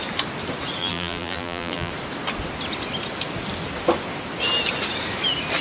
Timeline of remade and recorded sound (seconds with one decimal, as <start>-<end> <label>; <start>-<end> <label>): 0.0-0.8 recorded; 0.8-1.9 remade; 1.9-5.6 recorded